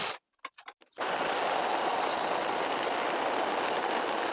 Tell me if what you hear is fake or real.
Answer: real